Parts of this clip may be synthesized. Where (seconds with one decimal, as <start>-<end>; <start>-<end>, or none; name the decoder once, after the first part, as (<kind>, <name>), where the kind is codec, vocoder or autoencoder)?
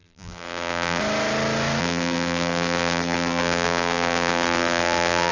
0.0-1.0 (vocoder, BigVGAN v2); 1.8-5.3